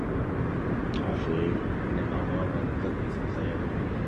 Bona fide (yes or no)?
yes